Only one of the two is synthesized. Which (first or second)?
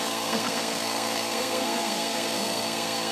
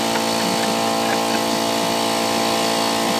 first